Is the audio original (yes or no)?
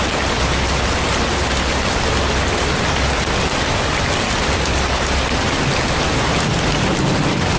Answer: yes